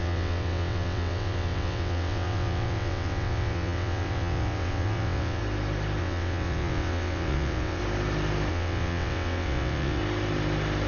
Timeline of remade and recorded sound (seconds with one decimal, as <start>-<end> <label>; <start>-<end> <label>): 0.0-5.4 remade; 5.4-6.0 recorded; 6.0-7.8 remade; 7.8-8.5 recorded; 8.5-10.0 remade; 10.0-10.9 recorded